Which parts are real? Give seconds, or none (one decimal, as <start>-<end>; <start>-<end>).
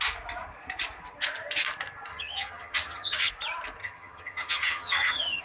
0.0-2.1; 3.3-3.8